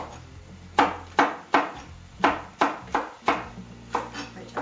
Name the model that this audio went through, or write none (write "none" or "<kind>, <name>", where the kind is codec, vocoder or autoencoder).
none